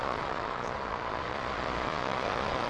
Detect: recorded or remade remade